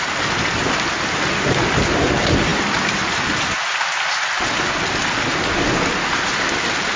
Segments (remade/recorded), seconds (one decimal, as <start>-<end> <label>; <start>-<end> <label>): 0.0-7.0 recorded